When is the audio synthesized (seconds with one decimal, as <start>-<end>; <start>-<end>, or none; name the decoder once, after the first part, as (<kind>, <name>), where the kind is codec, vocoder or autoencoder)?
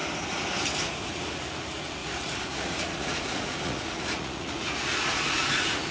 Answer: 1.1-5.9 (vocoder, Vocos)